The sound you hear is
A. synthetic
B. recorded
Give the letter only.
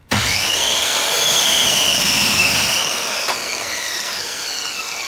A